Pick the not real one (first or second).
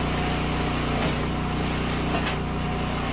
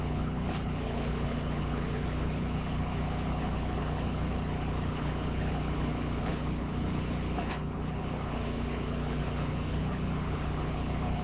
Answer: second